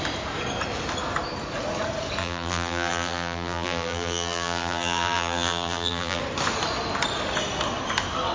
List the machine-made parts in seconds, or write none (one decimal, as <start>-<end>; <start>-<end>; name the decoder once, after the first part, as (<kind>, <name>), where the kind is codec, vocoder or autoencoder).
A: 2.2-6.2 (vocoder, BigVGAN v2)